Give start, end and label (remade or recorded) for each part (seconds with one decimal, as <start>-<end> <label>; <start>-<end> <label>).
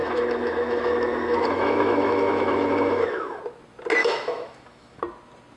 0.0-3.4 remade; 3.4-4.0 recorded; 4.0-5.0 remade; 5.0-5.6 recorded